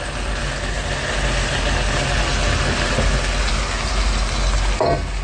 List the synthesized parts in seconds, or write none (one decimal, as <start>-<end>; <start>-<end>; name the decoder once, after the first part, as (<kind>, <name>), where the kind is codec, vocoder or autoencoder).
none